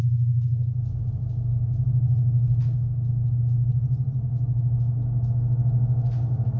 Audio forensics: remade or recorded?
recorded